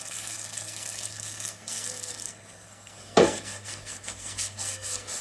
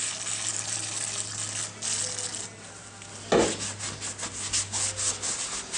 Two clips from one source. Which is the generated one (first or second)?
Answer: first